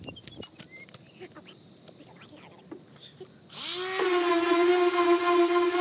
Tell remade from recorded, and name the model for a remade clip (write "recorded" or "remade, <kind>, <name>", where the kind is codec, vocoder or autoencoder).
recorded